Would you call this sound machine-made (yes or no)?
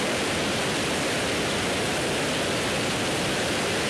yes